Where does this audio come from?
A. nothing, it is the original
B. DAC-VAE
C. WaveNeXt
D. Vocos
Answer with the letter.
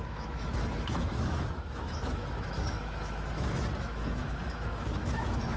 B